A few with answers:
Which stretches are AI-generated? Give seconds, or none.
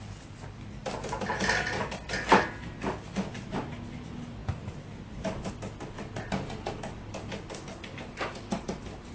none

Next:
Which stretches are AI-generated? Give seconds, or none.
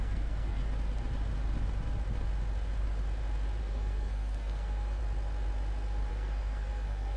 0.0-0.6 (codec, SNAC); 3.6-5.0; 6.1-7.2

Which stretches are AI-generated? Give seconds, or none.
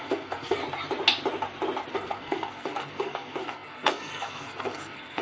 0.0-0.6 (codec, SNAC); 1.9-5.2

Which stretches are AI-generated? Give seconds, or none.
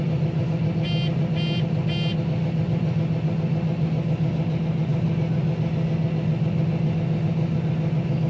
none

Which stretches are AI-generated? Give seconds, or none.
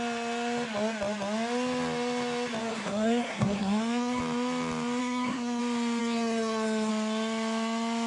2.6-4.2 (codec, SNAC); 5.0-5.6; 6.0-6.9